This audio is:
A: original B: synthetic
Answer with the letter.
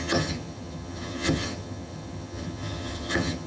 B